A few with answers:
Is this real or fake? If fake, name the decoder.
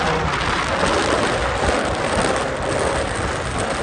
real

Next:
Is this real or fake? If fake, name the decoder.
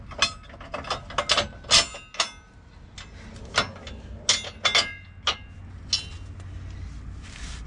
real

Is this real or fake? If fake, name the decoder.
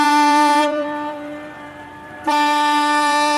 fake, vocoder, BigVGAN v2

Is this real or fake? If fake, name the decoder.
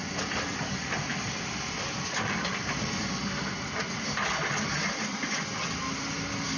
real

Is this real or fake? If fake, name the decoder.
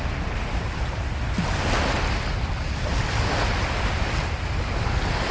real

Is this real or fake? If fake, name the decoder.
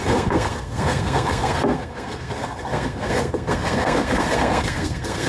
fake, codec, SNAC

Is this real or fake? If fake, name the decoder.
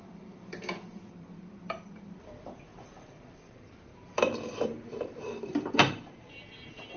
fake, vocoder, BigVGAN v2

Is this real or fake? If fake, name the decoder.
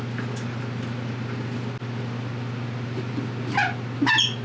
real